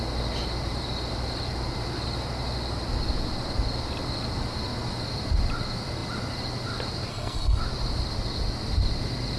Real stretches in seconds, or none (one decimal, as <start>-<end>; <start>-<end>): 0.0-7.1; 7.6-9.4